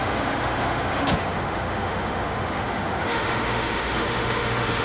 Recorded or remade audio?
remade